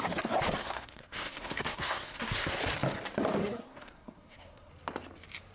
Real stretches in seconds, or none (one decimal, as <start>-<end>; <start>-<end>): 0.0-0.6; 2.6-3.4; 4.7-5.5